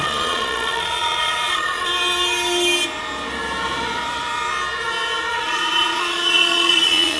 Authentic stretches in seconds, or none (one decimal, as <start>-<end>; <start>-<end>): 1.9-5.3